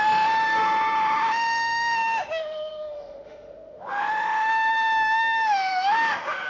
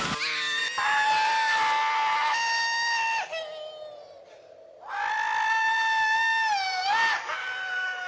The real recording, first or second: second